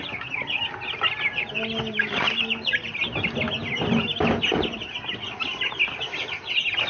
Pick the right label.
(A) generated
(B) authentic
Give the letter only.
B